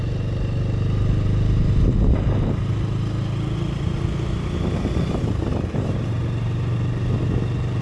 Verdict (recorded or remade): recorded